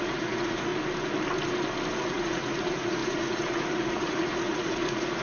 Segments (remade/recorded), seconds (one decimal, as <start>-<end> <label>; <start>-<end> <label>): 0.0-0.7 remade; 0.7-2.1 recorded; 2.1-5.2 remade

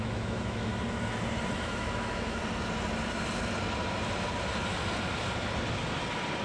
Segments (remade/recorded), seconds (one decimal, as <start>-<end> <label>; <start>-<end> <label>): 0.0-0.7 remade; 0.7-1.5 recorded; 1.5-2.4 remade; 2.4-6.4 recorded

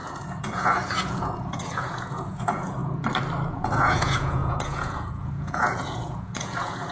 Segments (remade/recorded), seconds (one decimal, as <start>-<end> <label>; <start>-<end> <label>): 0.0-2.8 remade; 2.8-3.5 recorded; 3.5-6.9 remade

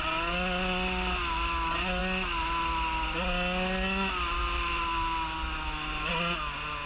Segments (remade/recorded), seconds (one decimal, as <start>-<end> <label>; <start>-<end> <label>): 0.0-6.9 recorded

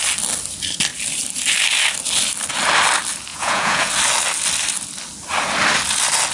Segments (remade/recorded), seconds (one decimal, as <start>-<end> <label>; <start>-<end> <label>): 0.0-3.3 recorded; 3.3-3.9 remade; 3.9-6.3 recorded